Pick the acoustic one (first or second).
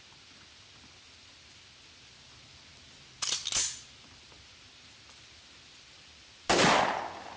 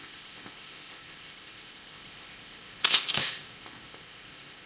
first